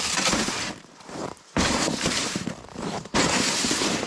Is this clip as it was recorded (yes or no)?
no